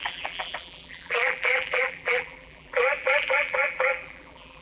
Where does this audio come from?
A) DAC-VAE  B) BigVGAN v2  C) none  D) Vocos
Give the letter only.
B